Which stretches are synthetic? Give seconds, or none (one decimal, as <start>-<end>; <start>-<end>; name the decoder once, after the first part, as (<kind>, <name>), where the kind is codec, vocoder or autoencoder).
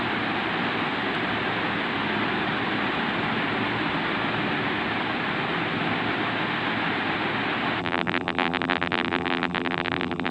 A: 7.8-10.3 (vocoder, BigVGAN v2)